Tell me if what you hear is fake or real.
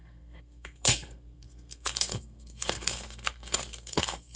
fake